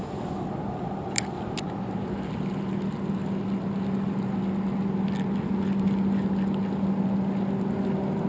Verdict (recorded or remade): recorded